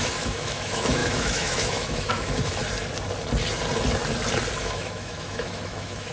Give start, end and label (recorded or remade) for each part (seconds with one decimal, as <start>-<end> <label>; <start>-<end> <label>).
0.0-2.6 remade; 2.6-4.6 recorded; 4.6-6.1 remade